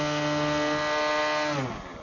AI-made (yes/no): no